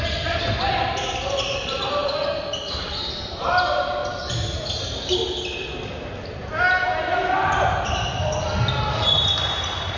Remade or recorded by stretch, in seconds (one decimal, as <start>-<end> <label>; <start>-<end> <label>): 0.0-10.0 recorded